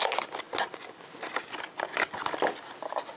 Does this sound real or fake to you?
real